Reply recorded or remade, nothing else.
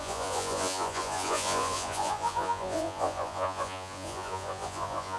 remade